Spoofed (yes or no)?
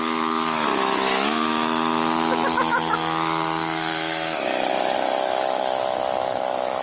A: yes